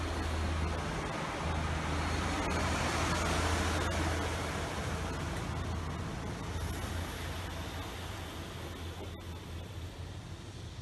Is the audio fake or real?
real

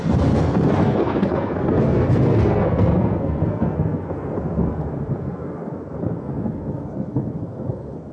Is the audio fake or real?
fake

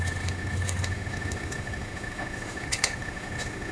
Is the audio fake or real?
fake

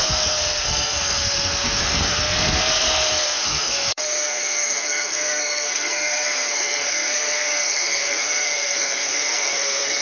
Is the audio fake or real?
fake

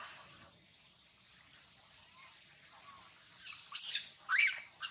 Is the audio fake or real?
fake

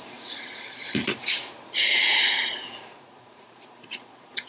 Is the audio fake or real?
fake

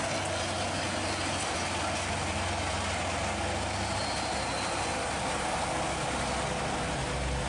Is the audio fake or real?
real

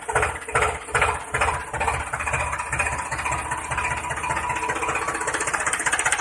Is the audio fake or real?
real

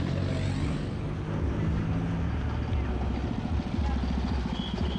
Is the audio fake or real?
real